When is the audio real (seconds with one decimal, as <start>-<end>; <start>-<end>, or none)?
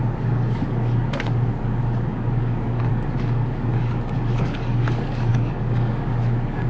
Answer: none